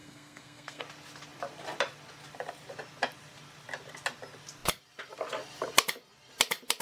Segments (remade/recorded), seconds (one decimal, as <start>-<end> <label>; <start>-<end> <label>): 0.0-0.8 remade; 0.8-6.8 recorded